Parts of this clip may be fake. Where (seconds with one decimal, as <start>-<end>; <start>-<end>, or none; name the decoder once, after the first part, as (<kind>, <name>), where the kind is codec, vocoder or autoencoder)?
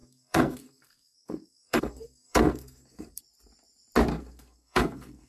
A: 0.0-3.2 (codec, SNAC); 4.1-5.3